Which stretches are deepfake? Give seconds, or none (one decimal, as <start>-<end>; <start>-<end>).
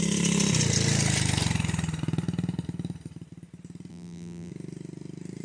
3.9-4.5